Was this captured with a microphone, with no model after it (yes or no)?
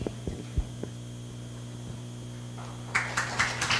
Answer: yes